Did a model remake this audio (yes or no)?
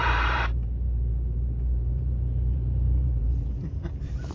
yes